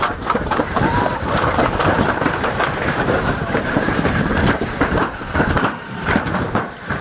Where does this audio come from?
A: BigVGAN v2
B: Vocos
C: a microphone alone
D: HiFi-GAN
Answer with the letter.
A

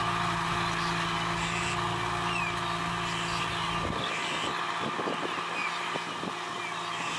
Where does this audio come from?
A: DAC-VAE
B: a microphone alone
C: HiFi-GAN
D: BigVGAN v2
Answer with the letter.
B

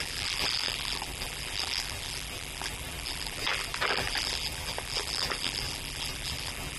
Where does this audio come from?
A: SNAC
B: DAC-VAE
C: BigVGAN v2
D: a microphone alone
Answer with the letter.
C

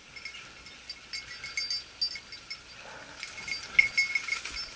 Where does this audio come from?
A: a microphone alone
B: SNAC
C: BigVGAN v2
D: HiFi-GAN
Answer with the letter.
A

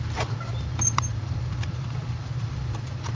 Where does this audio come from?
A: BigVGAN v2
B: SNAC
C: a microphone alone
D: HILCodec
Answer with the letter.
A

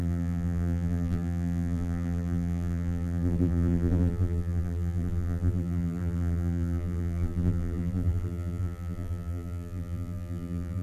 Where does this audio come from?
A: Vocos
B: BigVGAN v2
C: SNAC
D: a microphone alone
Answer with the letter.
B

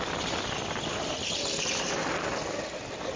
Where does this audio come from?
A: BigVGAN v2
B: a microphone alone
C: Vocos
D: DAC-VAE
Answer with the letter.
B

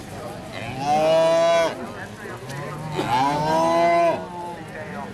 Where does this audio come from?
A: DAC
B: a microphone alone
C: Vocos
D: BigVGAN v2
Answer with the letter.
B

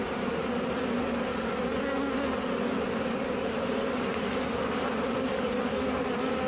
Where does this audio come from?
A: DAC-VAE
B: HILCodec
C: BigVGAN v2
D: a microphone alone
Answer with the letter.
D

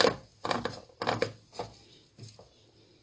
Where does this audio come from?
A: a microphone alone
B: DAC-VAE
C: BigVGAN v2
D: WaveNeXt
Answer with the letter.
A